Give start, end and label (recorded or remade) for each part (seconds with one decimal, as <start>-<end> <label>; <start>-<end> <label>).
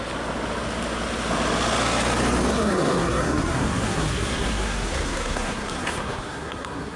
0.0-2.5 recorded; 2.5-7.0 remade